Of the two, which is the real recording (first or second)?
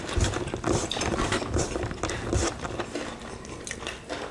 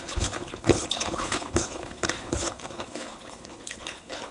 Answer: first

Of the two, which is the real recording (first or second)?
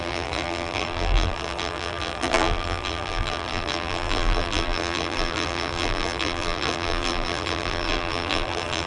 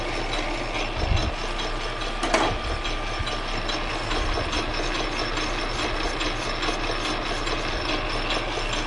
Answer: second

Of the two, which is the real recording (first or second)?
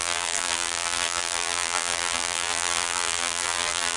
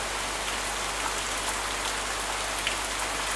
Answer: second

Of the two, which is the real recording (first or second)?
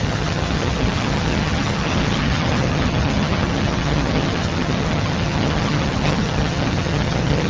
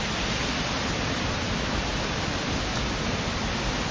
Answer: second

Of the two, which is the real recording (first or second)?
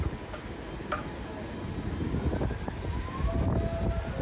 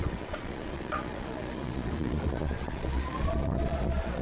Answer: first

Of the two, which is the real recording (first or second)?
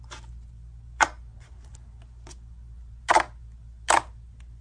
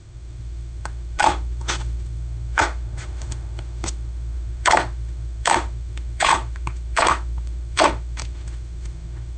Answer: first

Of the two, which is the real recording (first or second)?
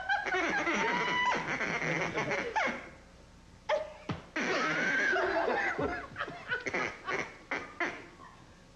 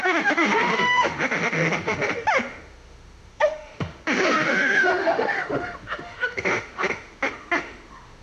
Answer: first